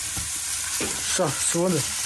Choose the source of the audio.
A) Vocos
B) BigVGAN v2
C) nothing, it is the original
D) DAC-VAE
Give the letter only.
C